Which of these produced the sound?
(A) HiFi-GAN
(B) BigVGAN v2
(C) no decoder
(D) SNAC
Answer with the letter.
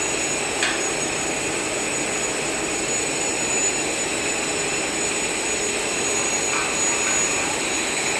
C